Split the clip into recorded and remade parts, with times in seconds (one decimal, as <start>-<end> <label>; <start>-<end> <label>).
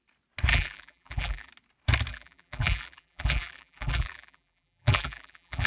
0.0-0.5 recorded; 0.5-1.5 remade; 1.5-2.1 recorded; 2.1-5.7 remade